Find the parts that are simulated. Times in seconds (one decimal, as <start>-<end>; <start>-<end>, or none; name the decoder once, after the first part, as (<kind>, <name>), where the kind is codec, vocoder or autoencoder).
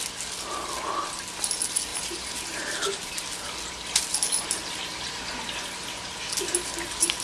1.9-3.1 (vocoder, BigVGAN v2)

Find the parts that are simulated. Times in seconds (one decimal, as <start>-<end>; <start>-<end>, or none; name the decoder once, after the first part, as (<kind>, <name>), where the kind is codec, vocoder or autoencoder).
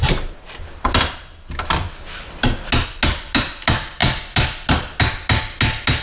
none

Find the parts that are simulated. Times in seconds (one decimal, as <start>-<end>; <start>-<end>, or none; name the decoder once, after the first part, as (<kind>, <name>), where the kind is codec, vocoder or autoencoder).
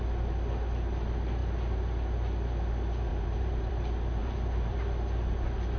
3.1-3.7 (vocoder, BigVGAN v2); 4.2-4.8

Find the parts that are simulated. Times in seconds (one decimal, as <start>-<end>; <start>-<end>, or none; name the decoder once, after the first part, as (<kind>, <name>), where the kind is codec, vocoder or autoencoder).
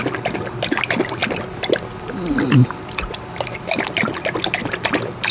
none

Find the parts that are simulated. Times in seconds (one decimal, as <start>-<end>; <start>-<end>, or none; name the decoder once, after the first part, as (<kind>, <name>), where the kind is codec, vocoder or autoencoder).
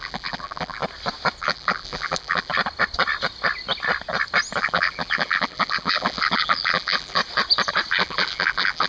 0.0-0.8 (vocoder, BigVGAN v2); 1.4-2.5; 4.6-7.2; 7.9-8.9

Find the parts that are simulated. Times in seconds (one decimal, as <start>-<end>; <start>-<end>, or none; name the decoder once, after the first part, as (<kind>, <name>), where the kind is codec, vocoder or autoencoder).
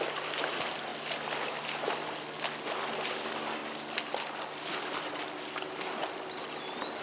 none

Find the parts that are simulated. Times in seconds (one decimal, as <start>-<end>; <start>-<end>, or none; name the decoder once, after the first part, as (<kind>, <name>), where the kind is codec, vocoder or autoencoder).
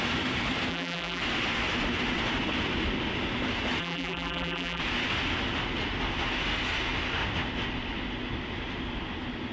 0.7-1.2 (vocoder, BigVGAN v2); 3.8-4.8